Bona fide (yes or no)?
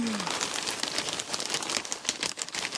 yes